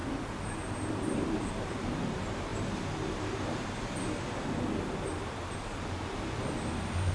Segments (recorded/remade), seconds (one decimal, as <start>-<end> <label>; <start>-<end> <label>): 0.0-0.7 recorded; 0.7-2.5 remade; 2.5-7.1 recorded

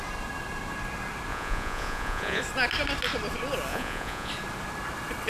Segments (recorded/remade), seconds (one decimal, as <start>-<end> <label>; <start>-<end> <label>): 0.0-1.3 recorded; 1.3-2.4 remade; 2.4-3.7 recorded; 3.7-4.3 remade; 4.3-5.3 recorded

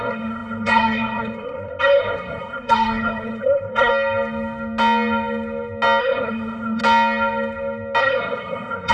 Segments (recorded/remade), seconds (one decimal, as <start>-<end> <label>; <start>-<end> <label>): 0.0-3.9 remade; 3.9-6.0 recorded; 6.0-6.8 remade; 6.8-8.0 recorded; 8.0-8.9 remade